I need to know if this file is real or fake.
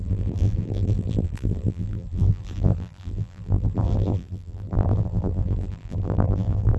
fake